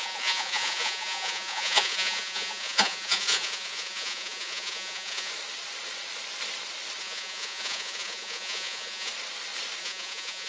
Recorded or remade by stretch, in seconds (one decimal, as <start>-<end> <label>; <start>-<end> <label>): 0.0-5.3 remade; 5.3-7.0 recorded; 7.0-9.1 remade; 9.1-9.8 recorded; 9.8-10.5 remade